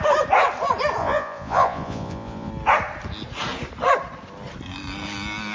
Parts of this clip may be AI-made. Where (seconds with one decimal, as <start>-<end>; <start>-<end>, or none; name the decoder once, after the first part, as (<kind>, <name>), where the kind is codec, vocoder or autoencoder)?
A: 1.0-2.5 (vocoder, Vocos)